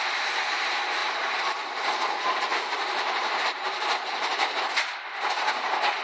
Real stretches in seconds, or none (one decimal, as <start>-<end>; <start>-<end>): 0.0-1.0; 4.6-6.0

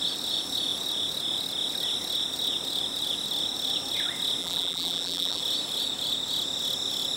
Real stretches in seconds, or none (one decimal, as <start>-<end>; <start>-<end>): 0.0-4.4; 5.4-7.2

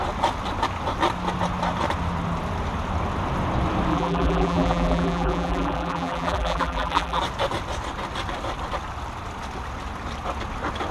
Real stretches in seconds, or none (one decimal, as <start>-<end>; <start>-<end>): 0.0-3.9; 7.2-10.9

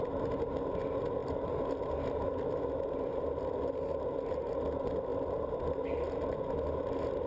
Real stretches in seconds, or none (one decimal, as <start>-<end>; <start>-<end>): 0.0-1.2; 1.7-5.1; 6.0-7.3

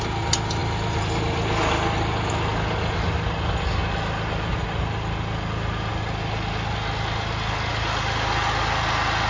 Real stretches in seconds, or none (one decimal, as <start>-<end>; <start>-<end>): 0.0-0.6; 2.3-9.3

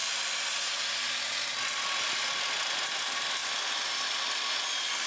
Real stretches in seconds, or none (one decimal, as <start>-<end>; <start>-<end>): 0.0-5.1

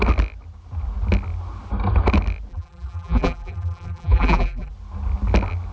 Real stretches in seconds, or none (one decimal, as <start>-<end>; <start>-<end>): 0.0-2.5; 4.7-5.7